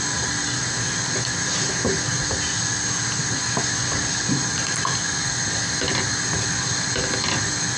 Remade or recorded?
recorded